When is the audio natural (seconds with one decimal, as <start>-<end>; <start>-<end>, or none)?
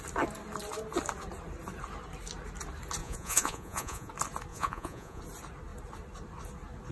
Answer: 0.0-3.0; 4.1-4.5; 5.2-6.9